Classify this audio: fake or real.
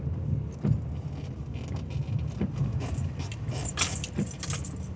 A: real